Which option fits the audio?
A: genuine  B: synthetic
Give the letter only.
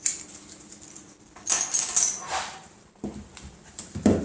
B